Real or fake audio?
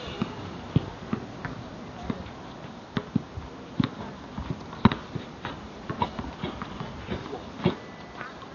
real